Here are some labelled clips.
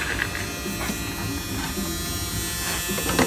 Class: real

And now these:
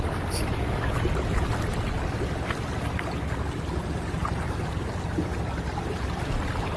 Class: real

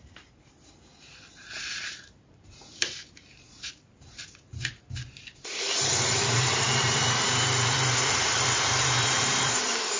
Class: fake